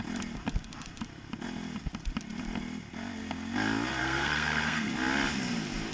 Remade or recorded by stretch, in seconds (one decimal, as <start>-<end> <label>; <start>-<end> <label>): 0.0-4.0 recorded; 4.0-4.9 remade; 4.9-5.9 recorded